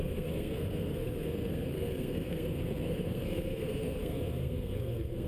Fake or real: fake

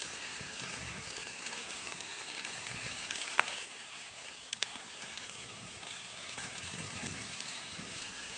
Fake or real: fake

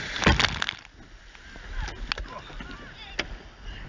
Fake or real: real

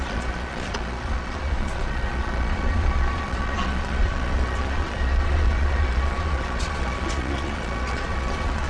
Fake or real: fake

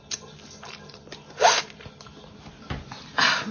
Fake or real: real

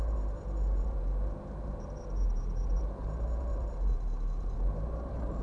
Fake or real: fake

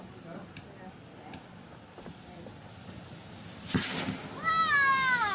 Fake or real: real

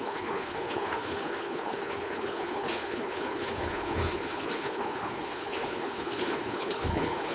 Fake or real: fake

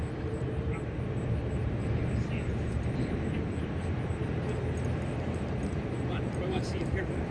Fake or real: fake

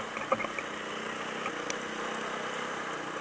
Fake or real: real